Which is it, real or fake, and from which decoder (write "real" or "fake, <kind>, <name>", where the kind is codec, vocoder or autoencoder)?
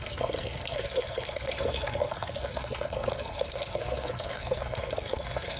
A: fake, codec, SNAC